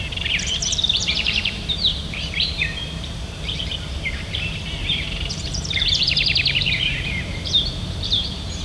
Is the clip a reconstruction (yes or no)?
yes